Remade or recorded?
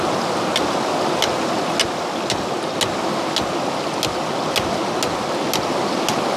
recorded